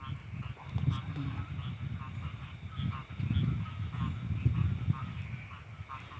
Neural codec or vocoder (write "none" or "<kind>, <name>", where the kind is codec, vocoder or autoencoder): none